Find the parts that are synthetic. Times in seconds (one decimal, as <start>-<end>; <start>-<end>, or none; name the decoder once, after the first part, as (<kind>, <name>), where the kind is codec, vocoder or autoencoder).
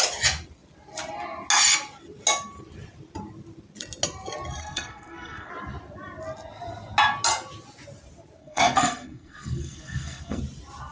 4.6-5.5 (codec, SNAC); 8.4-10.4